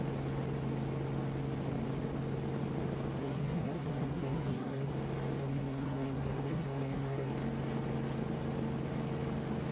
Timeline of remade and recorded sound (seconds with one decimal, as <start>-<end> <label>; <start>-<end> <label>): 0.0-3.2 recorded; 3.2-4.9 remade; 4.9-5.4 recorded; 5.4-7.3 remade; 7.3-9.7 recorded